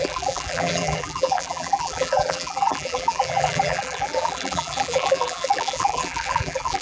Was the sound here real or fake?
fake